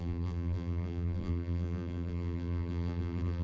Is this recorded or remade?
remade